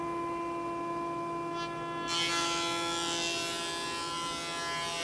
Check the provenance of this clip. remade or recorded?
recorded